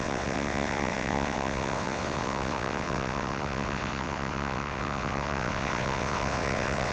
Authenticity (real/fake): fake